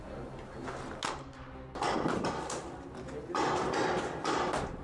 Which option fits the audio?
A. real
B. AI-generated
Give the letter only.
A